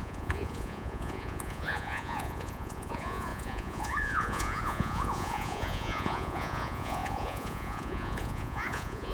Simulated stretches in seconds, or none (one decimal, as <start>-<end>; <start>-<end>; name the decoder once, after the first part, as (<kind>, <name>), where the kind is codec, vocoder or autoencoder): 0.0-9.1 (vocoder, Vocos)